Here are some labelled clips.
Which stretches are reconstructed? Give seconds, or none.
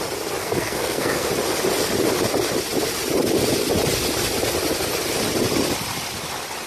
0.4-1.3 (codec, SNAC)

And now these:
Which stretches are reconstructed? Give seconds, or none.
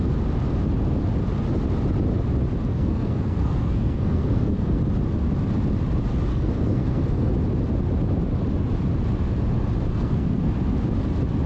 2.7-4.8 (codec, SNAC); 6.3-7.3; 9.9-10.5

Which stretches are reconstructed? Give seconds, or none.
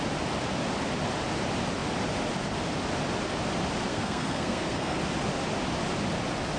3.9-5.0 (codec, SNAC)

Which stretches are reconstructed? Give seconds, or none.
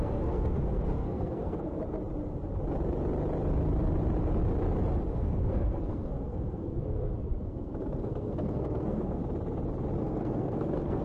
0.0-1.8 (codec, SNAC); 5.1-9.2; 10.0-11.0